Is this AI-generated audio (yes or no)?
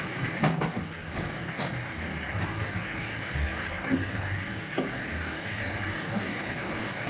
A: yes